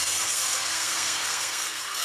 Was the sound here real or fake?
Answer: fake